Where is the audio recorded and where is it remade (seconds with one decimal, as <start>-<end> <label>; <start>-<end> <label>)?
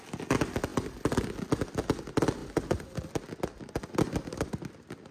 0.0-5.1 recorded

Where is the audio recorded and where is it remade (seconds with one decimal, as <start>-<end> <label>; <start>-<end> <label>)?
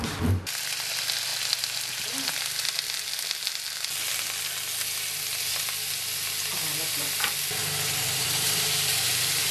0.0-7.6 recorded; 7.6-9.5 remade